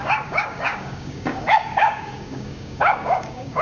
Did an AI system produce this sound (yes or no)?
yes